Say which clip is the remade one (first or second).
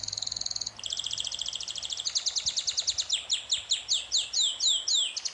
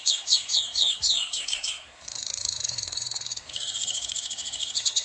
second